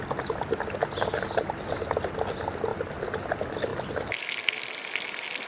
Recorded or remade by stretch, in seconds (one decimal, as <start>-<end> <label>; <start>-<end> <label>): 0.0-5.5 recorded